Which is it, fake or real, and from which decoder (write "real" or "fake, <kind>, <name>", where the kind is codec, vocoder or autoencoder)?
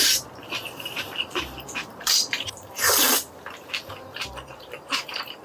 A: fake, vocoder, BigVGAN v2